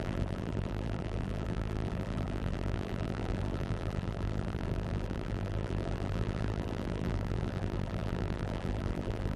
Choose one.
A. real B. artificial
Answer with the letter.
B